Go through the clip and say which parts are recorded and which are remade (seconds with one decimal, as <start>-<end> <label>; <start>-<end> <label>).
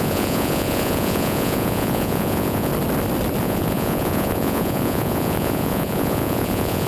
0.0-2.7 remade; 2.7-3.4 recorded; 3.4-6.9 remade